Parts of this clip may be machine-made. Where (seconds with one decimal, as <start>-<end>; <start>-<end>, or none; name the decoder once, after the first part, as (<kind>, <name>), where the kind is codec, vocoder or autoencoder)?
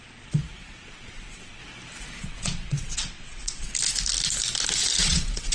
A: 0.0-1.6 (vocoder, WaveNeXt); 2.2-3.7; 5.0-5.5